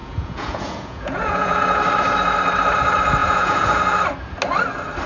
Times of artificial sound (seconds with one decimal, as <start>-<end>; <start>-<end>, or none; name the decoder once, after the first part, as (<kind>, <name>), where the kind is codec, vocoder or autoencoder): 0.0-1.8 (vocoder, Vocos); 3.2-3.8